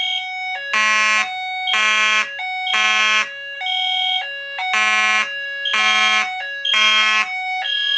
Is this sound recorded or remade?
recorded